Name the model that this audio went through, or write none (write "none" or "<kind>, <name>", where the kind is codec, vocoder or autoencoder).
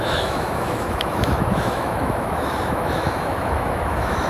autoencoder, DAC-VAE